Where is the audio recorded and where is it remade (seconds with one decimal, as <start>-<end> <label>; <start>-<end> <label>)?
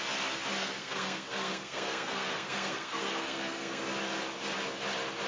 0.0-0.6 recorded; 0.6-3.8 remade; 3.8-5.3 recorded